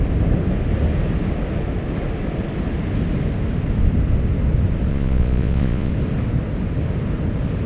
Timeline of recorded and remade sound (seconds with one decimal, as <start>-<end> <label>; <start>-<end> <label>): 0.0-4.9 recorded; 4.9-5.9 remade; 5.9-7.7 recorded